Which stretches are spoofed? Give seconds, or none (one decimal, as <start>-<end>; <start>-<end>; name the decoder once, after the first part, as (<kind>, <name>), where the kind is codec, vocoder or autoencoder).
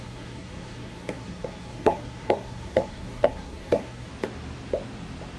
0.0-4.1 (codec, SNAC)